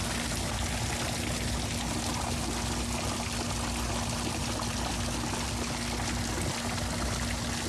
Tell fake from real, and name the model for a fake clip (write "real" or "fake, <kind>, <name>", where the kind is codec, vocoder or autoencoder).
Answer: real